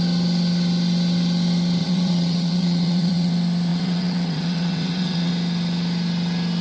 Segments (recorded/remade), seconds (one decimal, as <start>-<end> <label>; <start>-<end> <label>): 0.0-1.8 recorded; 1.8-3.3 remade; 3.3-3.7 recorded; 3.7-5.3 remade; 5.3-6.6 recorded